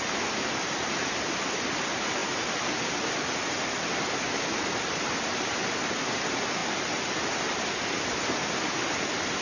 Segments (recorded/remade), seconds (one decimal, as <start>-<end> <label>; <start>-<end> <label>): 0.0-9.4 recorded